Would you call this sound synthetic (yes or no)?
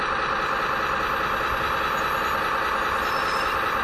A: no